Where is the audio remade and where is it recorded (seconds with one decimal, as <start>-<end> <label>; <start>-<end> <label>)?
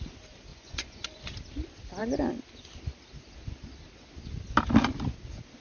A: 0.0-0.5 recorded; 0.5-1.3 remade; 1.3-5.6 recorded